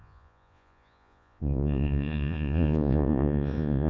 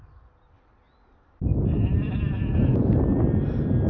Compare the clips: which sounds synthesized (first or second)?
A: first